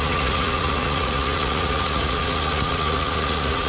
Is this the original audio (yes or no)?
no